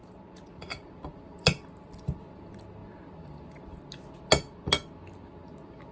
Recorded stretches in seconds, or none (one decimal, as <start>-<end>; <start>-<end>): 2.4-2.8; 3.7-5.9

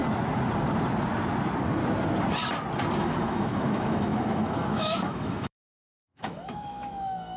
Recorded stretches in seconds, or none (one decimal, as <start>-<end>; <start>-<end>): 0.0-3.0

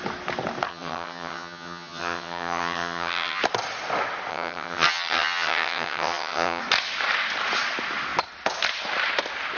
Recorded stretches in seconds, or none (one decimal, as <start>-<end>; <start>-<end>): 0.0-0.7; 3.4-4.3; 6.6-9.6

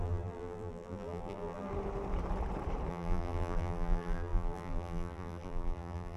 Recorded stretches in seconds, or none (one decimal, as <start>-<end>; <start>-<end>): 1.7-2.9

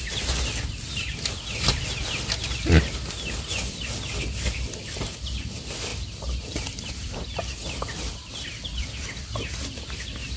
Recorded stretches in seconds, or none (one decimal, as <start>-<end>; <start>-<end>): 0.0-5.9; 6.9-10.4

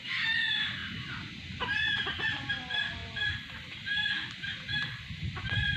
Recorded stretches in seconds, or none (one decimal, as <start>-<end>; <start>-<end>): 0.0-3.0; 3.8-5.8

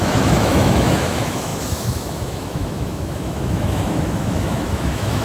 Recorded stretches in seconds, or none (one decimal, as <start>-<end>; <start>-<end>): none

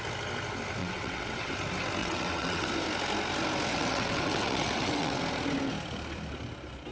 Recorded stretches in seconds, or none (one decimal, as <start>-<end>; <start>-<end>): 0.0-0.8; 1.5-2.0; 2.7-3.7; 5.2-6.9